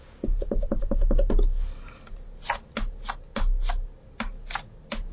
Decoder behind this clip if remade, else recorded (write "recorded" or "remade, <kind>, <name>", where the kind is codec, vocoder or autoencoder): recorded